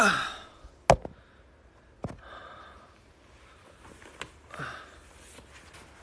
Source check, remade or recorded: recorded